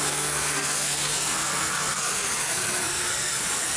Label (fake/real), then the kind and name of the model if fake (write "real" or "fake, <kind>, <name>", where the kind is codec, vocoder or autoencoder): fake, codec, SNAC